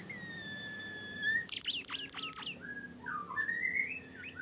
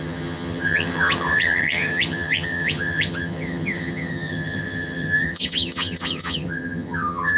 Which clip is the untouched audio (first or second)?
first